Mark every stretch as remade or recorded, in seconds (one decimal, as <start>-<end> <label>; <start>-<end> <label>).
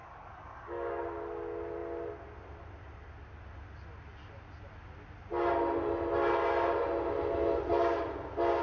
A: 0.0-1.0 remade; 1.0-8.6 recorded